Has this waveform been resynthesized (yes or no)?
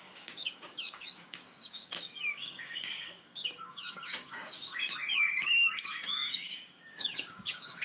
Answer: yes